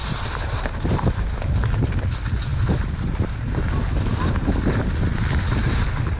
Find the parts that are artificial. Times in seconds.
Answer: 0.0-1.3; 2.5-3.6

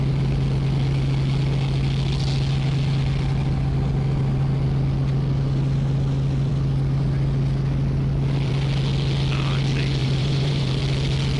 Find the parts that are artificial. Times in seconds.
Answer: 10.0-10.8